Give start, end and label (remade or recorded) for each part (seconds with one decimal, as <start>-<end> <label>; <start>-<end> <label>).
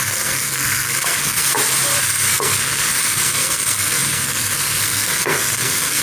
0.0-1.5 remade; 1.5-2.0 recorded; 2.0-6.0 remade